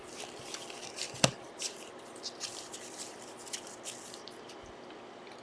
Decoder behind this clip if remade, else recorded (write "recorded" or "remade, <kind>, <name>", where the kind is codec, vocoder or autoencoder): recorded